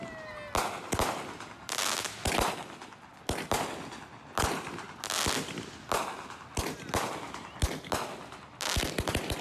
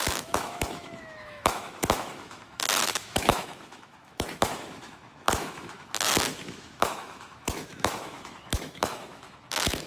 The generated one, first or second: second